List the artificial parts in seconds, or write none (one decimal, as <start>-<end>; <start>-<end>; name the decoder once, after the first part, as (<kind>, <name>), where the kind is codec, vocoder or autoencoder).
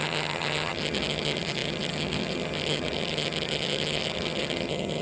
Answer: 0.0-5.0 (vocoder, HiFi-GAN)